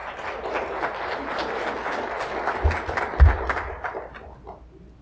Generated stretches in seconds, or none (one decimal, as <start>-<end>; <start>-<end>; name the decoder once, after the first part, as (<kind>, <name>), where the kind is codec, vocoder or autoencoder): none